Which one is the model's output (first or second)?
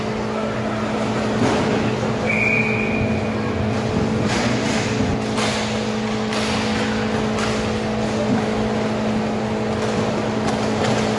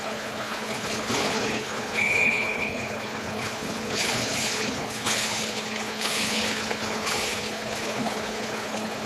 second